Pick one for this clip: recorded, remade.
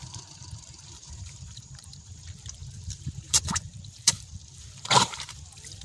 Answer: remade